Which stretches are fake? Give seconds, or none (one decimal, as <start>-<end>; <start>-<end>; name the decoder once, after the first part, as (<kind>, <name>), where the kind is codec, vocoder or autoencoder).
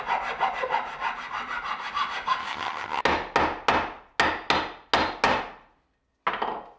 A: 2.4-3.0 (vocoder, HiFi-GAN)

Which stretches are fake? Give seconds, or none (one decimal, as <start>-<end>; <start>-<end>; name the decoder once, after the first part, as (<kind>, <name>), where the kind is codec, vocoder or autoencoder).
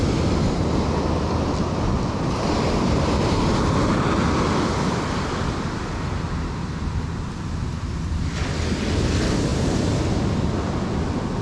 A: none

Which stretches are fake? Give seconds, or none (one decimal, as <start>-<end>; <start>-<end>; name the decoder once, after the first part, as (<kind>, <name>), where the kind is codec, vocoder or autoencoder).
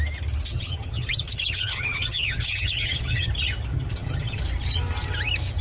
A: 0.5-3.3 (vocoder, HiFi-GAN); 3.7-4.4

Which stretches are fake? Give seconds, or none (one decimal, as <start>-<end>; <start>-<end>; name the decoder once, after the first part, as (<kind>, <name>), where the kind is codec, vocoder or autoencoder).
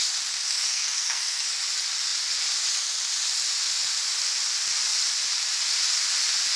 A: 0.5-1.4 (codec, SNAC)